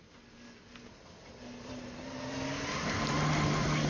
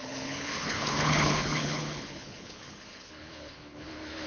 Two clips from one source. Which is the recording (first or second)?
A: first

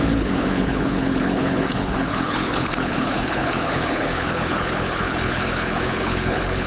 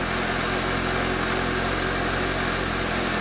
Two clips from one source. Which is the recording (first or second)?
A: second